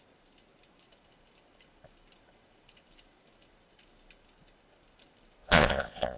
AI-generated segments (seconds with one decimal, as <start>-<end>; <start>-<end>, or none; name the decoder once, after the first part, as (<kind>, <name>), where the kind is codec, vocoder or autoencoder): 5.4-6.2 (vocoder, Vocos)